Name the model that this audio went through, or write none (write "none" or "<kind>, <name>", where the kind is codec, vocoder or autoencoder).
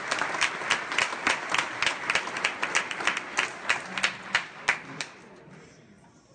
none